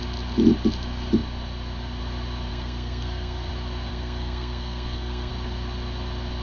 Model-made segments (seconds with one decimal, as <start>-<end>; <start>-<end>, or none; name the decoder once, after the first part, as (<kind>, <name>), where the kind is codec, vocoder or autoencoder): 2.5-3.5 (codec, SNAC); 3.9-5.3